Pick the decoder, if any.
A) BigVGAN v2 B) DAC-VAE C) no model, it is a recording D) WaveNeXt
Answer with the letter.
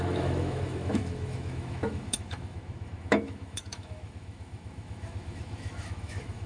B